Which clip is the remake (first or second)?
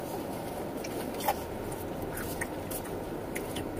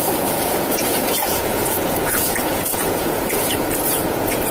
second